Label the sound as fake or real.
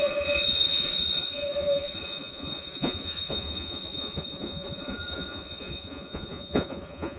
fake